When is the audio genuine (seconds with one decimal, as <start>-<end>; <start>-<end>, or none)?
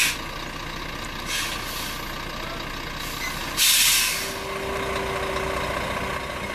0.0-6.5